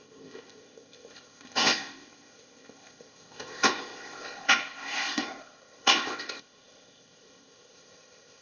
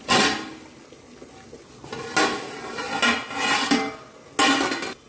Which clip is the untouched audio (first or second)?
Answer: second